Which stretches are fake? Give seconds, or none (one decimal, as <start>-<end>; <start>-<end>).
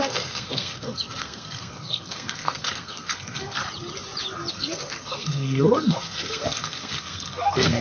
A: 0.0-3.6; 4.5-7.8